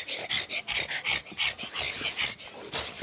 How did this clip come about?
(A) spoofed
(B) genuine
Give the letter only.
B